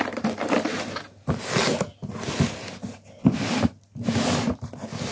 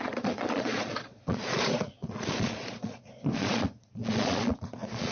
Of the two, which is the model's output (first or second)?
second